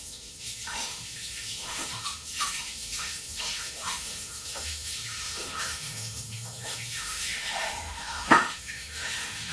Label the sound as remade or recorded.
remade